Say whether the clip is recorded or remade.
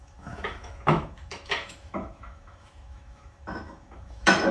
remade